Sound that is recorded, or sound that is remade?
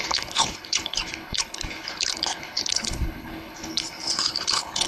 remade